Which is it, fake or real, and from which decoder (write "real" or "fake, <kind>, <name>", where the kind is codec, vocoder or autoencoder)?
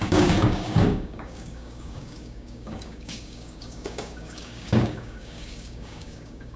fake, codec, DAC